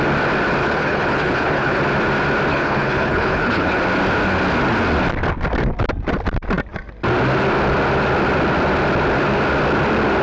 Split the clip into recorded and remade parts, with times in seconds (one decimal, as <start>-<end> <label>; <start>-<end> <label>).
0.0-0.6 recorded; 0.6-1.8 remade; 1.8-2.5 recorded; 2.5-3.8 remade; 3.8-10.2 recorded